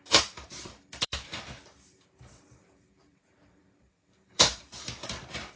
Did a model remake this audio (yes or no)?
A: yes